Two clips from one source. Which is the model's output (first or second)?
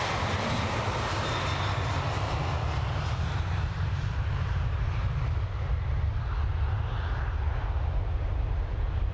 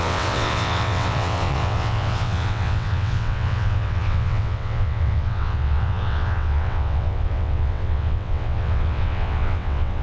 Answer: second